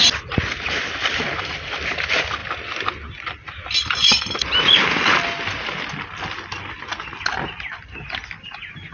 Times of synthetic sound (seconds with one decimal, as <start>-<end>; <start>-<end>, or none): none